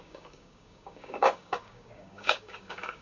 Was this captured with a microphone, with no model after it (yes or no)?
no